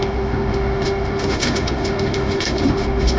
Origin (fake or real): fake